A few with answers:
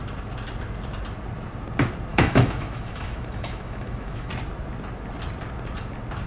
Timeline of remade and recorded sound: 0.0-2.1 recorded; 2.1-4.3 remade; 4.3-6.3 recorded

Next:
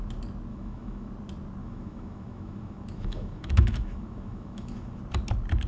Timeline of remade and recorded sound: 0.0-0.5 recorded; 0.5-1.1 remade; 1.1-1.6 recorded; 1.6-5.0 remade; 5.0-5.7 recorded

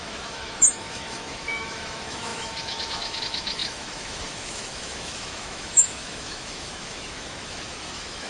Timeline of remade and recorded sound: 0.0-8.3 remade

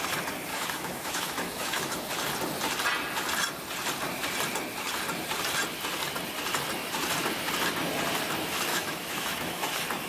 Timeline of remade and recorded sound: 0.0-0.5 recorded; 0.5-2.1 remade; 2.1-8.7 recorded; 8.7-9.7 remade; 9.7-10.1 recorded

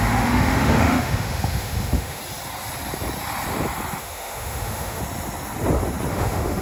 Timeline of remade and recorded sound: 0.0-2.2 remade; 2.2-4.0 recorded; 4.0-5.0 remade; 5.0-6.1 recorded; 6.1-6.6 remade